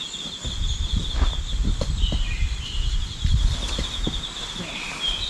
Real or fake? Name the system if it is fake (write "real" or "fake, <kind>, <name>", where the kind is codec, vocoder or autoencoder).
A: real